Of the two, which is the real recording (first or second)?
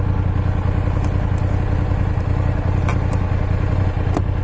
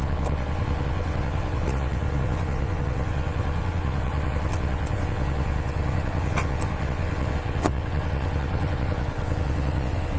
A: first